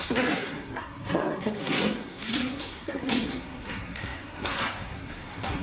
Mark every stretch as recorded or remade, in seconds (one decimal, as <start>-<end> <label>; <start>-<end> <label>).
0.0-5.6 remade